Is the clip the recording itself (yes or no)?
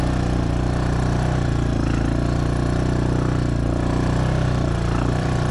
no